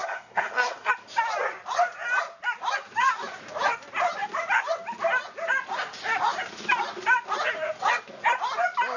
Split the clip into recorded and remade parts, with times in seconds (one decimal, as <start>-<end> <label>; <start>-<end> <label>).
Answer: 0.0-0.9 remade; 0.9-9.0 recorded